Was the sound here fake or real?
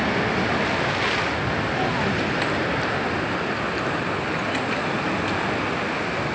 real